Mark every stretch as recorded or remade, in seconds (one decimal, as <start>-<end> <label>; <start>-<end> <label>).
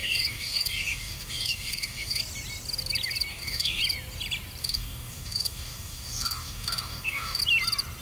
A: 0.0-2.2 remade; 2.2-3.3 recorded; 3.3-3.8 remade; 3.8-4.6 recorded; 4.6-7.4 remade; 7.4-8.0 recorded